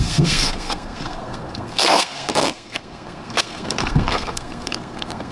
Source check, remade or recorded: remade